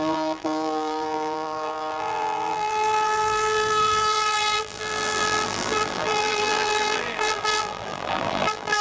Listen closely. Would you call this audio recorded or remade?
remade